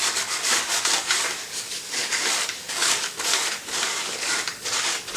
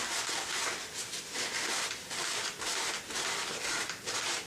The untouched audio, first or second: second